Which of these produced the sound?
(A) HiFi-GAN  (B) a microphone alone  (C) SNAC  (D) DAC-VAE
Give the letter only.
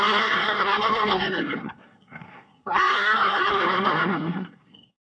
C